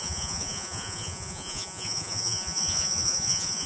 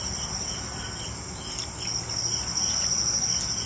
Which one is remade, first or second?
first